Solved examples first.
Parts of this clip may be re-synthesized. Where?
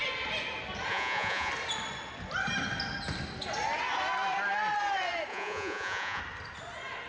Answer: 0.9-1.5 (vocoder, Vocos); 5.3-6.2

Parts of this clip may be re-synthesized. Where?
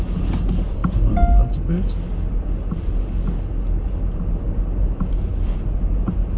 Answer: none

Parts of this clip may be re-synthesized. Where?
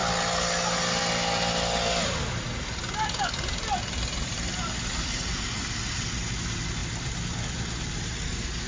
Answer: none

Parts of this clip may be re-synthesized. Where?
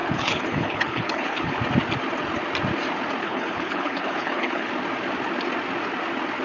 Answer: 0.0-1.6 (codec, HILCodec); 3.2-4.7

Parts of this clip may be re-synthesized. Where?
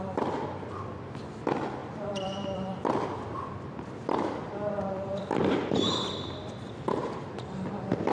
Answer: 1.8-6.7 (vocoder, BigVGAN v2)